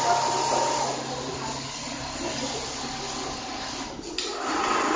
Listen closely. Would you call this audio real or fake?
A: real